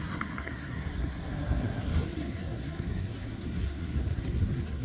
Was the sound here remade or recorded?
remade